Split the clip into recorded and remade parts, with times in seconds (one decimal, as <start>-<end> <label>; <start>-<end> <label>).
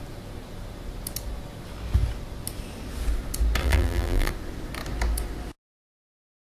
0.0-3.6 recorded; 3.6-4.3 remade; 4.3-6.5 recorded